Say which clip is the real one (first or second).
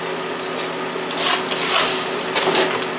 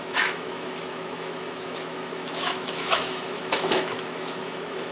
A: first